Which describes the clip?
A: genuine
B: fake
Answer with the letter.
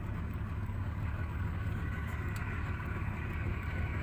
B